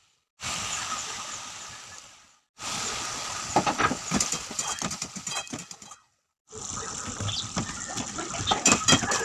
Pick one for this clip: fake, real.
real